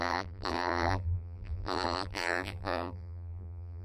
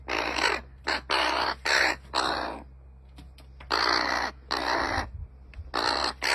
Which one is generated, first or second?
first